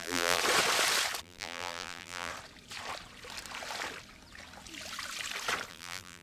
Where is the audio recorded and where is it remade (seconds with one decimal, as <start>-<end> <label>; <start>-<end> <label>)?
0.0-0.4 remade; 0.4-1.2 recorded; 1.2-2.3 remade; 2.3-5.7 recorded; 5.7-6.2 remade